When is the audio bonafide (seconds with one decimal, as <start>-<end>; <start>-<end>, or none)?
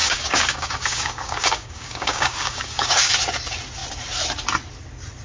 3.1-5.2